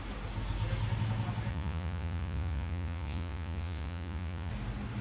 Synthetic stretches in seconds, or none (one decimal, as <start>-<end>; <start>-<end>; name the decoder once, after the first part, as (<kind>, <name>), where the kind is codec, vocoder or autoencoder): 1.5-4.5 (vocoder, Vocos)